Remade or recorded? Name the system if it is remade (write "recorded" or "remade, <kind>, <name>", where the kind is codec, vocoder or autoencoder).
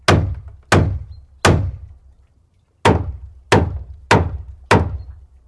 recorded